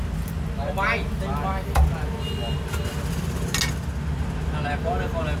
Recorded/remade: recorded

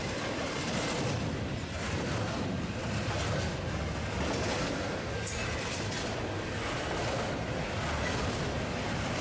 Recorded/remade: recorded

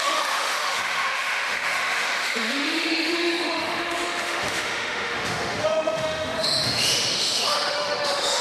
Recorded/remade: remade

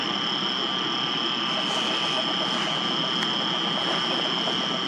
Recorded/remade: recorded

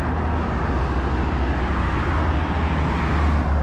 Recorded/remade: recorded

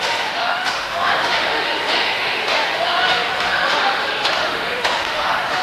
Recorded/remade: remade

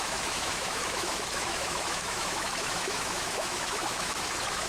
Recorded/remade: remade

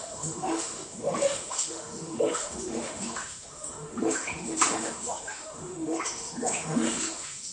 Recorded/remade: remade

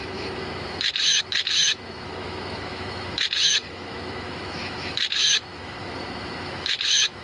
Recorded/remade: remade